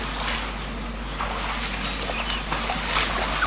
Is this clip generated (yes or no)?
no